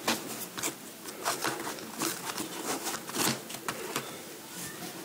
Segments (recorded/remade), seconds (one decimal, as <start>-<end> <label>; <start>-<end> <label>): 0.0-5.0 recorded